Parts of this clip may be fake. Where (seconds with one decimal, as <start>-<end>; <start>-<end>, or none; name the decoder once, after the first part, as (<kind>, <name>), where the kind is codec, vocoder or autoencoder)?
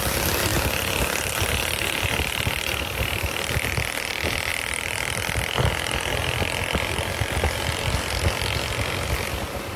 none